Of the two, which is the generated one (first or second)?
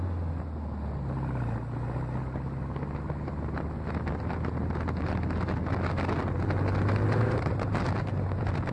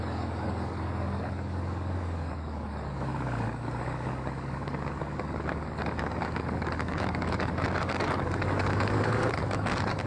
second